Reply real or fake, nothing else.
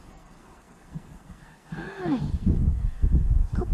fake